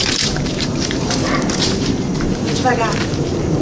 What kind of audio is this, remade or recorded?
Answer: remade